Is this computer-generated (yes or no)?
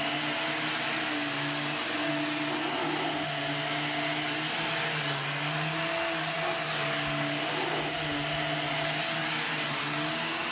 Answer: no